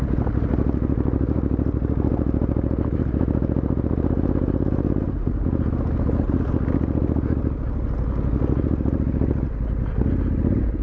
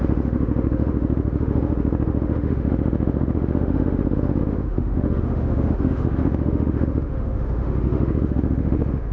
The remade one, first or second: second